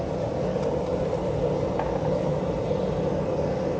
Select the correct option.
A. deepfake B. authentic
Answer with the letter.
B